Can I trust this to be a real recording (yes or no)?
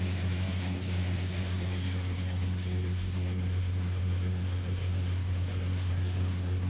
no